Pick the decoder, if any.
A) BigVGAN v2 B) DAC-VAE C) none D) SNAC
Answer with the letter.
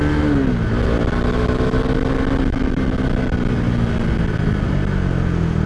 C